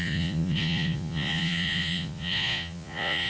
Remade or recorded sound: remade